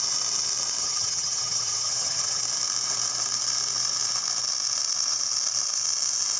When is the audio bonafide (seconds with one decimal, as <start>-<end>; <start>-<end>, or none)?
0.0-0.8; 2.4-6.4